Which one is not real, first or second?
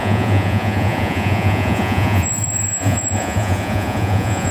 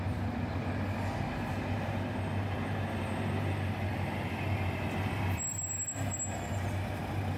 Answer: first